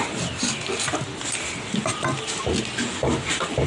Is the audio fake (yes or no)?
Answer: no